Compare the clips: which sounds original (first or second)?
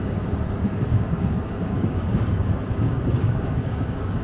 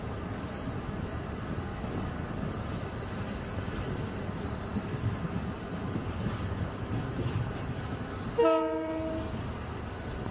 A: second